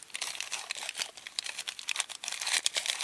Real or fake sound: real